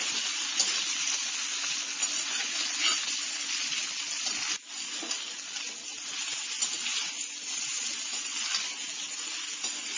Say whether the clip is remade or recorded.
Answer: recorded